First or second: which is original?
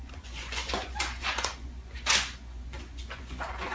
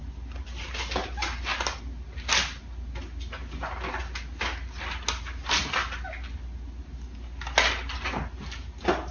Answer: second